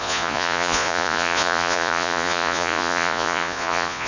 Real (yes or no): no